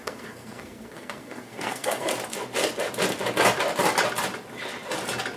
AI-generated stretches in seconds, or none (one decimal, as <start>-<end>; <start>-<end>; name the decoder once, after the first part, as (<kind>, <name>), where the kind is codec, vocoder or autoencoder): 0.0-2.1 (codec, SNAC)